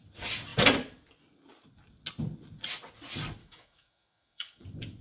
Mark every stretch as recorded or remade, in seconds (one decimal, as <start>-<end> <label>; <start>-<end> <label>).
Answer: 0.0-3.4 recorded; 3.4-4.6 remade; 4.6-5.0 recorded